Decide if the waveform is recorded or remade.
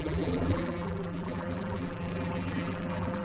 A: remade